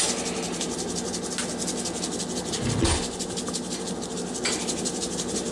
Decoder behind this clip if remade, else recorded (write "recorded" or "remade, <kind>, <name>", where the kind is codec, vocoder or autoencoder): recorded